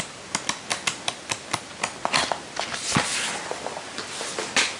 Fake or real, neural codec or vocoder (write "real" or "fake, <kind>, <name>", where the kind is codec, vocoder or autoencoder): real